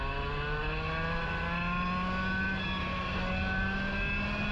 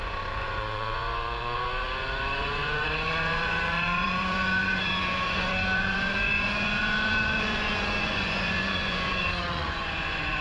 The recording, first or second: first